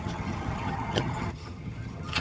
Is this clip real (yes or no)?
no